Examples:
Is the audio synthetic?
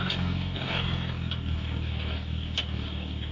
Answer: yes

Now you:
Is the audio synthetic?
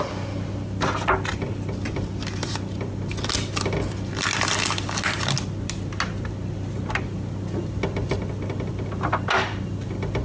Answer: no